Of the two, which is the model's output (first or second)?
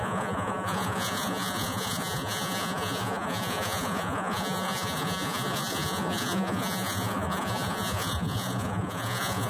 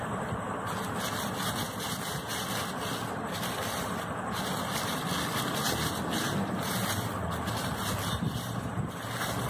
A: first